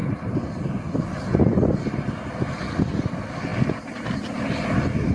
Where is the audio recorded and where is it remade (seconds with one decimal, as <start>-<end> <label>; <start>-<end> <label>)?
0.0-5.1 recorded